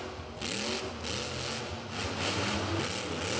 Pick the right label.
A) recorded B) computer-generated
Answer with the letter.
A